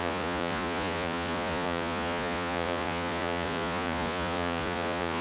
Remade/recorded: remade